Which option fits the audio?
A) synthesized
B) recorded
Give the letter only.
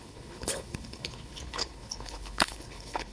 A